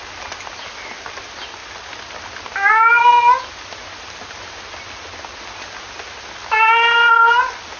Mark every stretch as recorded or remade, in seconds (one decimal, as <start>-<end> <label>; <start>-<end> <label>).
0.0-7.8 recorded